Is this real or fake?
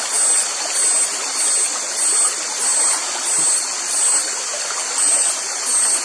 real